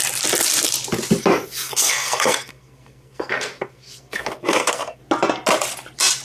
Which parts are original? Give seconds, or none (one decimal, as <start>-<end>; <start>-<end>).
0.0-1.3; 5.0-6.2